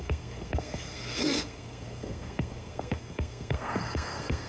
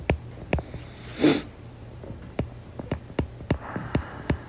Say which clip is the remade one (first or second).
first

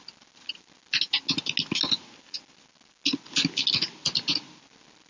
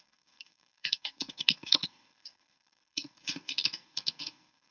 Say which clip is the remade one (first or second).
second